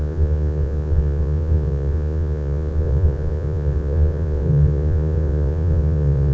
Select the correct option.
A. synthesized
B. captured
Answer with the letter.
A